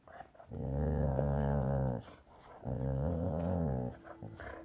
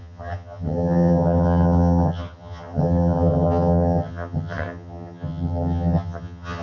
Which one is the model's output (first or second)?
second